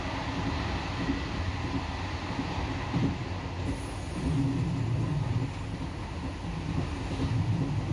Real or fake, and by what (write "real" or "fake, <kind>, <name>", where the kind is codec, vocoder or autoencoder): real